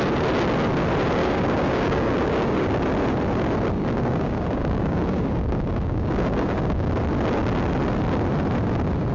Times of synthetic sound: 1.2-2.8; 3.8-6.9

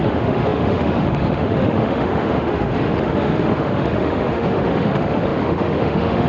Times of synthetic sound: 0.0-6.3

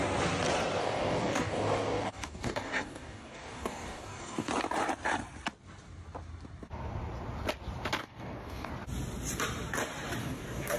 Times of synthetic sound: 0.8-4.5; 8.0-8.7; 10.2-10.8

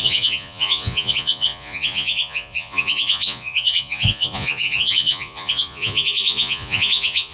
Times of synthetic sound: 0.0-7.3

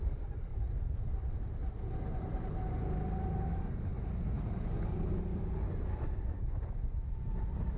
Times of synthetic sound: 0.0-0.5; 1.2-1.6; 4.0-7.8

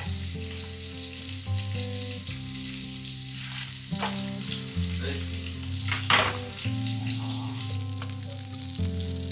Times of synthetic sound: 7.0-7.6

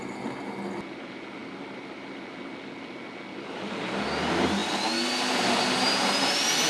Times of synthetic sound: none